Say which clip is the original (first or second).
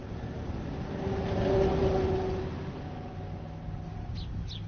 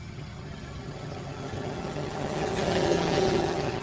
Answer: first